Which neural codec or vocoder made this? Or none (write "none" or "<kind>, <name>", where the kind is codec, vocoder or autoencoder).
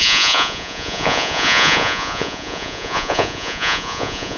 vocoder, Vocos